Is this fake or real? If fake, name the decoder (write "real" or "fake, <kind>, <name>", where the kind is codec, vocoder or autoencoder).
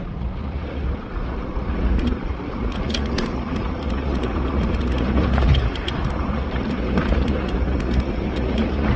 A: fake, vocoder, Vocos